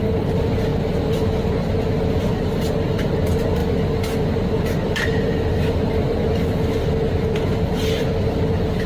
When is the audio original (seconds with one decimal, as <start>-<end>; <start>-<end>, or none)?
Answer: 0.0-8.9